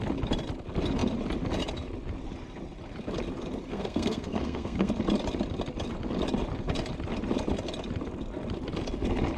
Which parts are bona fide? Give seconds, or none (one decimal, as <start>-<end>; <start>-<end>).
0.0-3.7; 4.9-9.4